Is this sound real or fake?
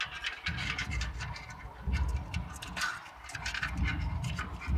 real